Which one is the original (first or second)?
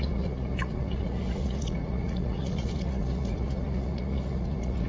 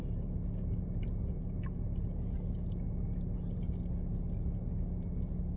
second